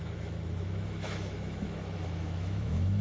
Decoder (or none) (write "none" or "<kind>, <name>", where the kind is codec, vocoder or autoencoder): autoencoder, DAC-VAE